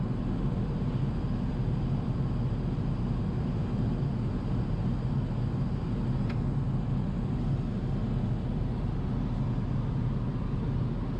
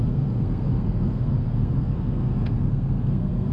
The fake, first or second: second